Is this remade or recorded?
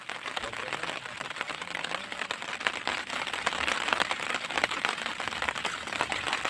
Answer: recorded